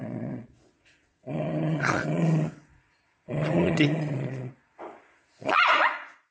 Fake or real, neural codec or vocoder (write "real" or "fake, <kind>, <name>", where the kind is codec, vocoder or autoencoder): fake, vocoder, Vocos